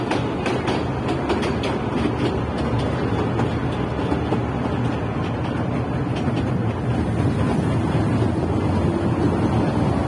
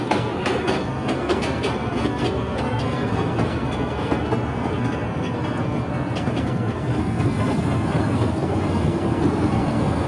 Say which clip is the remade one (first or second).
second